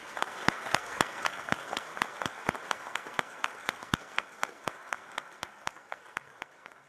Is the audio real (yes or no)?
no